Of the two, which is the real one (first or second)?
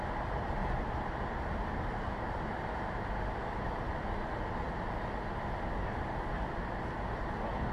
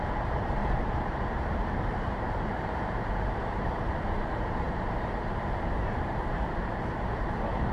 first